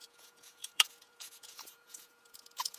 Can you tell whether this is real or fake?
fake